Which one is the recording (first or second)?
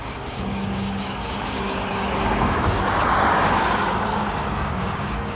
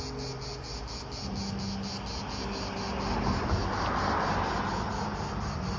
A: second